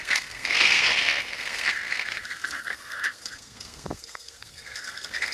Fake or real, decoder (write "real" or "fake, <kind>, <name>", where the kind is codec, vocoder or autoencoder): fake, codec, SNAC